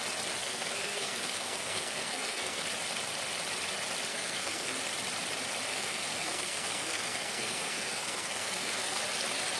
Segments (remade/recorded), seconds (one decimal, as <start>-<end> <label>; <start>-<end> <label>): 0.0-0.4 recorded; 0.4-2.6 remade; 2.6-4.1 recorded; 4.1-4.7 remade; 4.7-5.7 recorded; 5.7-9.0 remade; 9.0-9.6 recorded